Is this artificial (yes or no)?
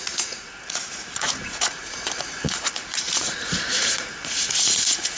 yes